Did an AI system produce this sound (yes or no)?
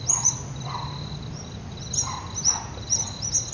no